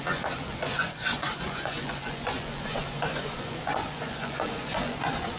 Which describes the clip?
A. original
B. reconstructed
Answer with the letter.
B